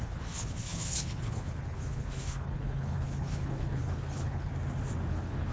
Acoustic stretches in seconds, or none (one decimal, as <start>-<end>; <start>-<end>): 4.5-5.1